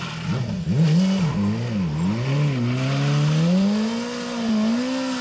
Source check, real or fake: real